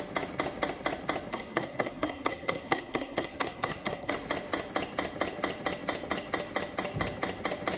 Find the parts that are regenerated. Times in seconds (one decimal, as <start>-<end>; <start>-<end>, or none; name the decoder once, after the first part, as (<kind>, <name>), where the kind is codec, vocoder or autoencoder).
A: 1.3-4.1 (codec, SNAC)